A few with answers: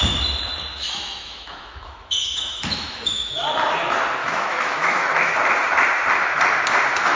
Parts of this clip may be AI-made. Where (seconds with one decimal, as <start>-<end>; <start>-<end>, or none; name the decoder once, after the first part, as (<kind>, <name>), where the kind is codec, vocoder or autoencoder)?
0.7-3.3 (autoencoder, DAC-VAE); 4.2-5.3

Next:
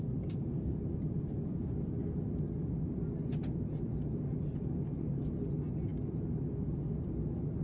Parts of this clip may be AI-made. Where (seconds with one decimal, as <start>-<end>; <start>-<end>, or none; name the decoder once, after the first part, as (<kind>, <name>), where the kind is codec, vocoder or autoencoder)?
none

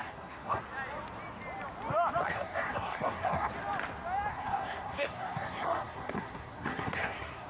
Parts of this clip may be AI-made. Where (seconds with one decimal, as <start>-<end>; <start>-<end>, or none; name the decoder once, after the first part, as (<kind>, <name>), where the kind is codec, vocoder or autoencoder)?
0.0-0.6 (codec, SNAC); 2.2-3.5; 4.3-7.5

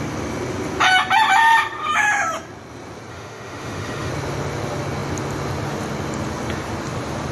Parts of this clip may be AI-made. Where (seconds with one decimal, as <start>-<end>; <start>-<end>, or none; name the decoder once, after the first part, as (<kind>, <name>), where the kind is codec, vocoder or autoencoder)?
3.1-4.1 (autoencoder, DAC-VAE)

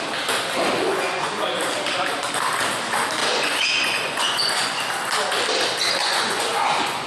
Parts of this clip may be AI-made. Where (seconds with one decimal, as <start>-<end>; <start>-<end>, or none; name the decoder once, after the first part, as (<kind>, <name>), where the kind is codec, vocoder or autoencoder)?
0.9-1.4 (vocoder, Vocos); 3.2-4.9; 6.0-7.1

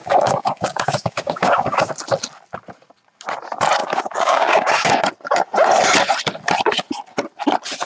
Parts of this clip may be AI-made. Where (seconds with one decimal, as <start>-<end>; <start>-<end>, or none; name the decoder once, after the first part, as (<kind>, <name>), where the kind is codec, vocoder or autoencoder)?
0.0-1.9 (codec, DAC); 3.8-5.0

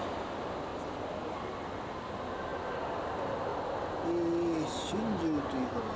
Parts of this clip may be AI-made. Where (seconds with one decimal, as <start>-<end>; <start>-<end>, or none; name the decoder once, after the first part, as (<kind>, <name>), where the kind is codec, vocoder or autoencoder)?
none